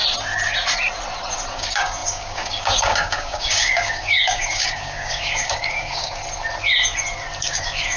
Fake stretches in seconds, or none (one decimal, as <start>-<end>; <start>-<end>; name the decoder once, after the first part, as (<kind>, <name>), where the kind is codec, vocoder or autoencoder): 1.5-6.2 (codec, DAC); 7.4-8.0